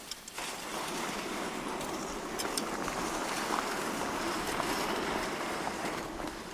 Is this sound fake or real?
fake